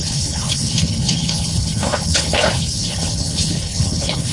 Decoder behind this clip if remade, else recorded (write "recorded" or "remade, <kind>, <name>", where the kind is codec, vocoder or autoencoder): remade, codec, HILCodec